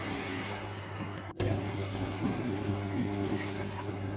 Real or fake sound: fake